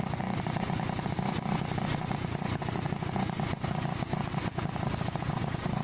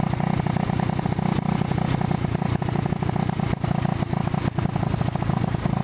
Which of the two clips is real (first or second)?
second